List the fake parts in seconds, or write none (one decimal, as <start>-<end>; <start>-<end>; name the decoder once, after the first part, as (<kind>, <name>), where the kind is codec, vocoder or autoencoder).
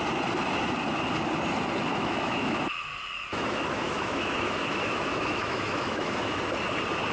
1.9-2.6 (autoencoder, DAC-VAE); 3.3-6.4